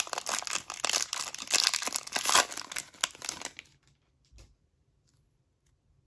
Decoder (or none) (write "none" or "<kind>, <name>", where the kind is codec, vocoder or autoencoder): none